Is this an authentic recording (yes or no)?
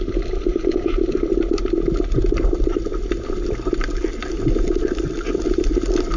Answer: yes